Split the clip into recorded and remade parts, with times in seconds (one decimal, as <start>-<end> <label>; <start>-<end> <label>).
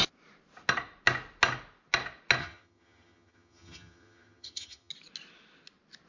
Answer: 0.0-2.4 recorded; 2.4-4.9 remade; 4.9-6.1 recorded